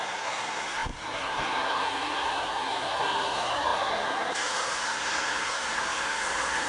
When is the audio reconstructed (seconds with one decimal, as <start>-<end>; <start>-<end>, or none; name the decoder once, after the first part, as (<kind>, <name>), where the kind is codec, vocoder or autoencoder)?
0.0-6.7 (codec, SNAC)